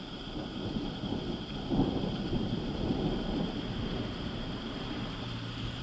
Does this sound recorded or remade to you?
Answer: remade